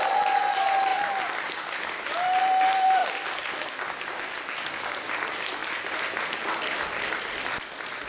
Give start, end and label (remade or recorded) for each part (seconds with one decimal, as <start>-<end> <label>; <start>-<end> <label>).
0.0-8.1 recorded